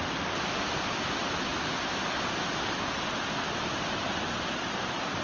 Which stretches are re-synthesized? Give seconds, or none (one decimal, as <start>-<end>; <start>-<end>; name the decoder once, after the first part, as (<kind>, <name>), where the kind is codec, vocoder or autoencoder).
0.0-1.5 (vocoder, BigVGAN v2); 2.6-3.7; 4.5-5.2